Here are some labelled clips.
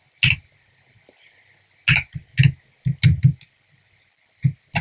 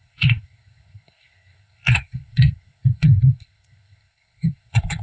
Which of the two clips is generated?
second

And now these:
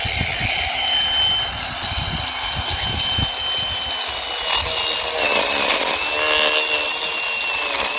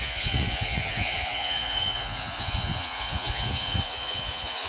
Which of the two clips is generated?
second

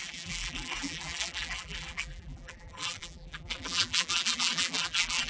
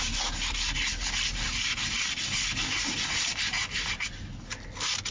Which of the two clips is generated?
first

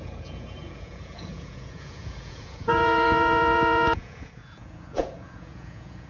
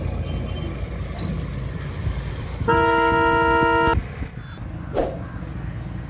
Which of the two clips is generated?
first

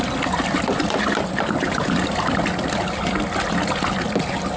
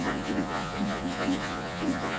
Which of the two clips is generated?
second